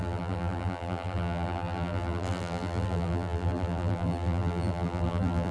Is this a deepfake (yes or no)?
yes